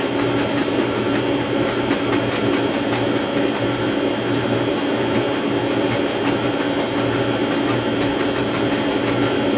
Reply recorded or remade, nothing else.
recorded